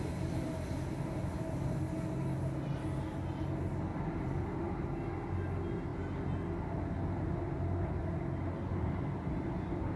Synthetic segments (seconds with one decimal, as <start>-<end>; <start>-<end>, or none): 3.9-4.6; 8.7-9.6